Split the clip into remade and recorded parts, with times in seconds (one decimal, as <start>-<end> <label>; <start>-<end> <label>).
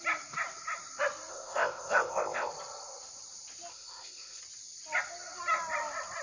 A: 0.0-1.3 recorded; 1.3-2.5 remade; 2.5-3.7 recorded; 3.7-4.4 remade; 4.4-6.2 recorded